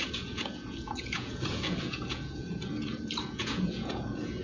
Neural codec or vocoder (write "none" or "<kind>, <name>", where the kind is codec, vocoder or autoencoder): vocoder, Vocos